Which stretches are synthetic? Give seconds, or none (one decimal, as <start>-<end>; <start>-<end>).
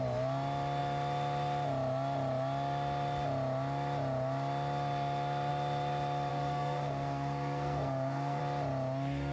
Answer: 6.3-8.4